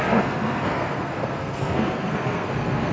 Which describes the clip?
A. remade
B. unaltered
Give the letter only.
A